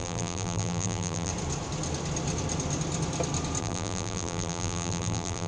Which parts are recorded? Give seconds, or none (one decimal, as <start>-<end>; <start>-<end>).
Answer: 1.3-3.6